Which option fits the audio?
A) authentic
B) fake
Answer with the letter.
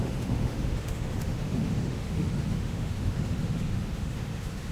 B